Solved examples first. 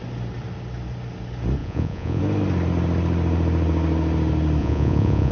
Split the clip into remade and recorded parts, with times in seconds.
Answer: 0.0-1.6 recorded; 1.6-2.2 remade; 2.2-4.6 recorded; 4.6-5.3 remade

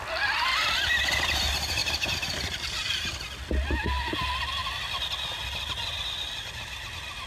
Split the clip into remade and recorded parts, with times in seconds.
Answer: 0.0-1.8 recorded; 1.8-3.2 remade; 3.2-7.3 recorded

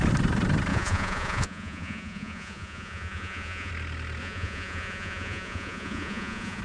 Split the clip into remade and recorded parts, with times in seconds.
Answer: 0.0-0.7 recorded; 0.7-3.7 remade; 3.7-4.2 recorded; 4.2-6.6 remade

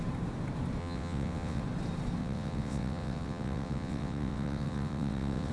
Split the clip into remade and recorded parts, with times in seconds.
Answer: 0.0-0.8 recorded; 0.8-1.6 remade; 1.6-2.2 recorded; 2.2-5.5 remade

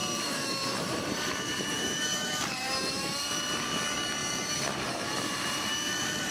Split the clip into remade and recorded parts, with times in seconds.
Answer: 0.0-6.3 remade